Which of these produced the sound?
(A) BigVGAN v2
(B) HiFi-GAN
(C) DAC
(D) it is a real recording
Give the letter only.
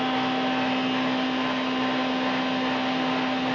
D